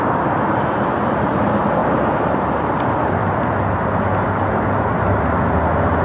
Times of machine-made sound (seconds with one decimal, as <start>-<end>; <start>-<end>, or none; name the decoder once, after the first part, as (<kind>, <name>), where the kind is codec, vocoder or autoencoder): none